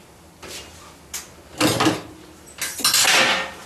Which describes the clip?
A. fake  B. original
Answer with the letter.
B